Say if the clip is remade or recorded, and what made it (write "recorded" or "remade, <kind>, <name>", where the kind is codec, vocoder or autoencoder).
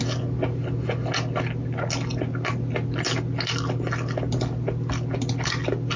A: recorded